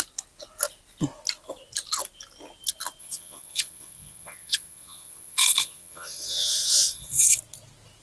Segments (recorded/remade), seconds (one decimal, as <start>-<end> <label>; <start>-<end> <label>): 0.0-3.0 recorded; 3.0-7.4 remade; 7.4-8.0 recorded